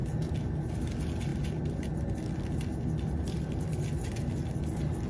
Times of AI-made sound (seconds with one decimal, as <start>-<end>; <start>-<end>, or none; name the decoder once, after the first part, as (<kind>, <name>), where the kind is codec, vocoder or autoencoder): none